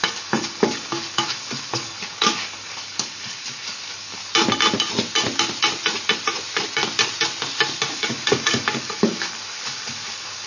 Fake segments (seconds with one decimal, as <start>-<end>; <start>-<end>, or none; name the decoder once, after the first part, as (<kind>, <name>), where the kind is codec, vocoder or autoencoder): 0.0-4.2 (codec, DAC); 7.9-10.5